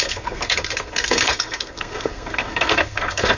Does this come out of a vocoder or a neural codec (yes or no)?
yes